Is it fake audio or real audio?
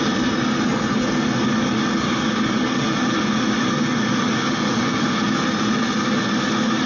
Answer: real